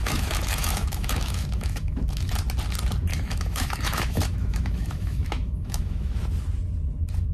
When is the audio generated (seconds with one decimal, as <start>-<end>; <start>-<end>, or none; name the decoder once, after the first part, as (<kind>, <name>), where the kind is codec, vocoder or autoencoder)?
0.0-2.3 (autoencoder, DAC-VAE); 3.1-6.2